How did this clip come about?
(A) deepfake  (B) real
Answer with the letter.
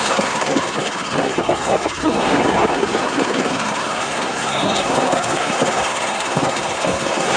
A